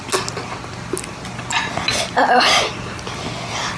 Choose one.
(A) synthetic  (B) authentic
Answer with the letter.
B